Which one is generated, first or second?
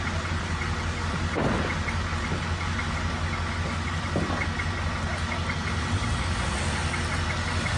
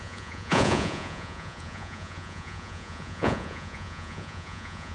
second